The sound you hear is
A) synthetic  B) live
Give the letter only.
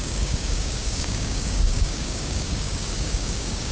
A